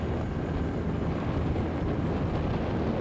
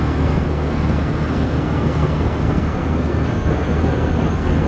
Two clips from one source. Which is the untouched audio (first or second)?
first